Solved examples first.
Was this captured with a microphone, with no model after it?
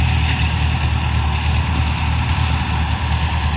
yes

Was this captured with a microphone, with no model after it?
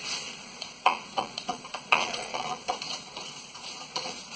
no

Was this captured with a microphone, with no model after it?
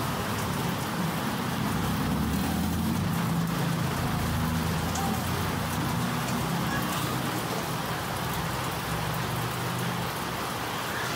yes